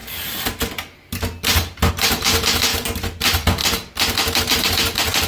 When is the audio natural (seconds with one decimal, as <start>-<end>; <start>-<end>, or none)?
0.0-1.9; 2.7-3.2; 3.6-4.4